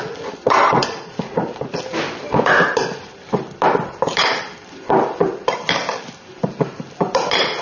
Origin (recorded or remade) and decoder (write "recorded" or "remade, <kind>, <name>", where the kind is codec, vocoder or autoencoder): recorded